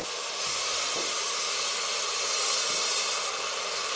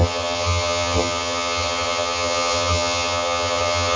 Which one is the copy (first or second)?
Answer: second